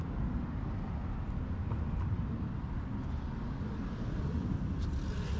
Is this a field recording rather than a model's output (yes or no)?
yes